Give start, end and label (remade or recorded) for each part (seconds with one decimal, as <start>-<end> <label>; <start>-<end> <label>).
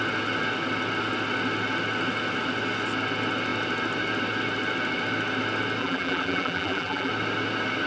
0.0-5.8 recorded; 5.8-7.1 remade; 7.1-7.9 recorded